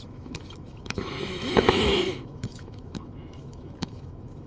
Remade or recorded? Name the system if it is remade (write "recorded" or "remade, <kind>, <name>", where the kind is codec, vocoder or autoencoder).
remade, autoencoder, DAC-VAE